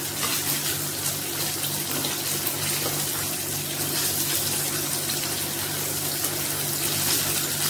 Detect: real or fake real